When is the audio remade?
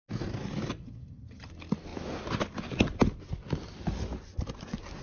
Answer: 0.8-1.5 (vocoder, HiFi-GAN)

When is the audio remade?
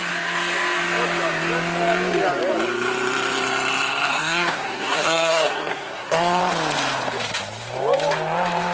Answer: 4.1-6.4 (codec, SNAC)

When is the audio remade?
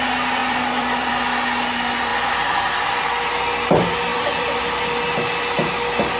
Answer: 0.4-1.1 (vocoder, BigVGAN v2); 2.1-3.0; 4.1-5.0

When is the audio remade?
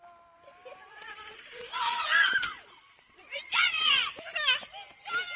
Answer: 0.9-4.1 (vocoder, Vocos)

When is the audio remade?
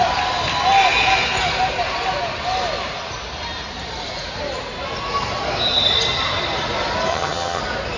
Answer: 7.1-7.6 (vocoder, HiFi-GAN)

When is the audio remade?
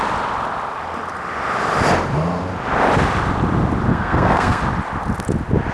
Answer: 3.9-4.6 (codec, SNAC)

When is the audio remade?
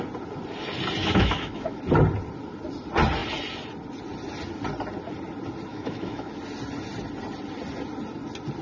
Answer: 1.0-1.8 (autoencoder, DAC-VAE); 5.7-6.3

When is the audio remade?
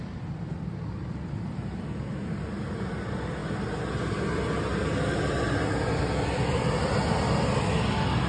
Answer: none